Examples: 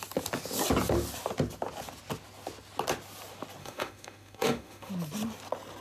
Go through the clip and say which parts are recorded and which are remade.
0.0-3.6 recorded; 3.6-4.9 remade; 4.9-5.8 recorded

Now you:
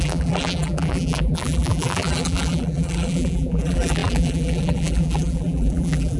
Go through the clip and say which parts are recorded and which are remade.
0.0-6.2 remade

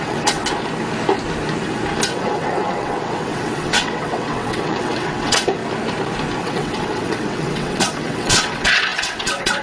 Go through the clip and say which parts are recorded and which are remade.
0.0-0.4 remade; 0.4-2.1 recorded; 2.1-5.6 remade; 5.6-6.4 recorded; 6.4-9.6 remade

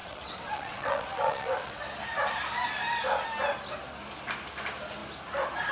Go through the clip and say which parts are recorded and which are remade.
0.0-1.8 remade; 1.8-5.7 recorded

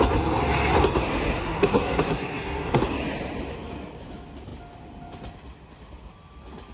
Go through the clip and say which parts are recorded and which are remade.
0.0-1.4 recorded; 1.4-2.8 remade; 2.8-6.7 recorded

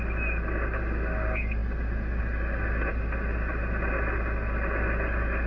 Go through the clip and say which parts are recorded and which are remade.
0.0-5.5 recorded

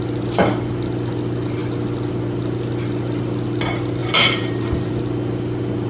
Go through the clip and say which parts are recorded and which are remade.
0.0-4.0 recorded; 4.0-4.9 remade; 4.9-5.9 recorded